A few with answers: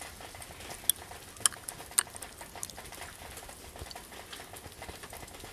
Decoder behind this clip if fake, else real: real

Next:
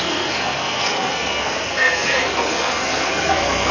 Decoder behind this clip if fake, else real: fake, codec, SNAC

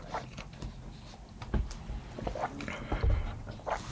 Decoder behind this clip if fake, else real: real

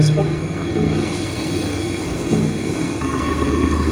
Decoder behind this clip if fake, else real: fake, codec, SNAC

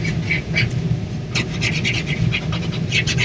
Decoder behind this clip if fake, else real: real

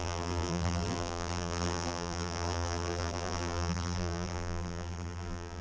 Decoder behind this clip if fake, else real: fake, vocoder, BigVGAN v2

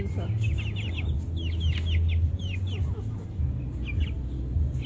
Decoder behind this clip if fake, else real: real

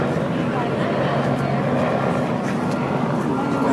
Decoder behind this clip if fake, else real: real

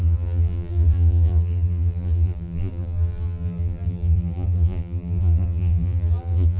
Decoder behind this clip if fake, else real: fake, vocoder, BigVGAN v2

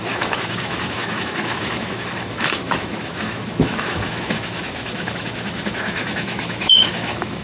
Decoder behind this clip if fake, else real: fake, autoencoder, DAC-VAE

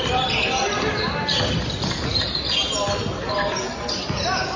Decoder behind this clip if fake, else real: real